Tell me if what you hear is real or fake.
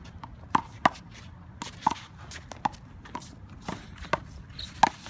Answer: real